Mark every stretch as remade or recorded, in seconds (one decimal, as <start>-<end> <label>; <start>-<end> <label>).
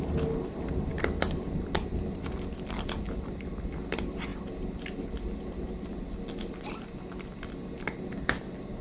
0.0-8.8 recorded